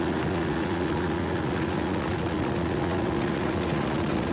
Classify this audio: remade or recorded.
remade